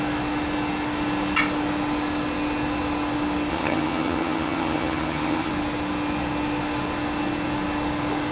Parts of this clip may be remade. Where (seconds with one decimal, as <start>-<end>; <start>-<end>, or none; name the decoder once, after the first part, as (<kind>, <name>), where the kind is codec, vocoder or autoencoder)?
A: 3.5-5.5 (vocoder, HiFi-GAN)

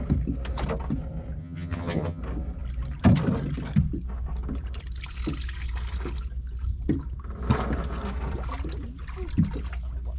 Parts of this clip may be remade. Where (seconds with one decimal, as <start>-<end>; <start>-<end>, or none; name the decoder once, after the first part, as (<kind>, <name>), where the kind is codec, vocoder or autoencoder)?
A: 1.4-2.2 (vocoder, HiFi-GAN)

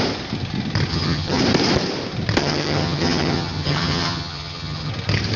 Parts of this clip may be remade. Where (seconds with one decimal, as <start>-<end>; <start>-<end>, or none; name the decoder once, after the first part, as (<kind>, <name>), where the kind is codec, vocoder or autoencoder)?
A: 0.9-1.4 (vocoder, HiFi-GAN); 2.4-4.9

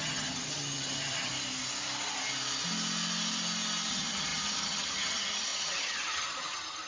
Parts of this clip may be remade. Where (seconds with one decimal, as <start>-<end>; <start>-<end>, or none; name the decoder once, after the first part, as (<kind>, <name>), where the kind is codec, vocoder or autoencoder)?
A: 0.0-1.3 (vocoder, HiFi-GAN); 3.9-6.9

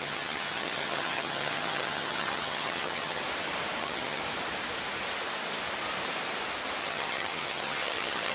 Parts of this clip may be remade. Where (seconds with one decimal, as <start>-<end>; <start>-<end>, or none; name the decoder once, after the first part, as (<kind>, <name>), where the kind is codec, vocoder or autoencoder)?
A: 0.0-3.2 (vocoder, HiFi-GAN); 3.8-4.2; 6.8-8.3

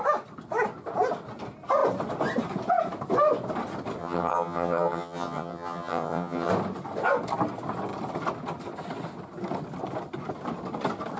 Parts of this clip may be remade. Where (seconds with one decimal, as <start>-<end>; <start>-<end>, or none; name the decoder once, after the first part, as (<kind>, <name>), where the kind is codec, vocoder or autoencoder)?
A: 4.0-6.5 (vocoder, HiFi-GAN)

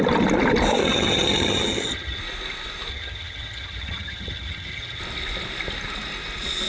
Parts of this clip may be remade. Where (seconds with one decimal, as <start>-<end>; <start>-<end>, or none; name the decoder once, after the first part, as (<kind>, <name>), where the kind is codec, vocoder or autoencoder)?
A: 0.8-2.2 (vocoder, HiFi-GAN); 2.9-5.0